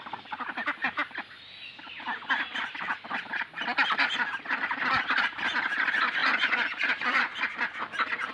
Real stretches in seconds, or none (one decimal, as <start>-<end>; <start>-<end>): 0.0-6.2; 7.4-8.3